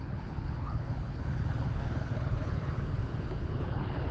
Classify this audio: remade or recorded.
remade